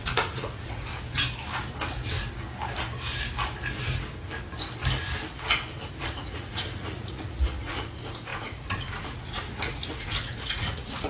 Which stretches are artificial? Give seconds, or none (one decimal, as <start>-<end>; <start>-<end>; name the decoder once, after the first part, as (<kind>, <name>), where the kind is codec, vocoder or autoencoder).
0.0-0.9 (vocoder, Vocos); 6.0-11.1